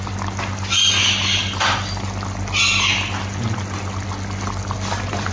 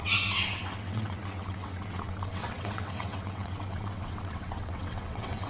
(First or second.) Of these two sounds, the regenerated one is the second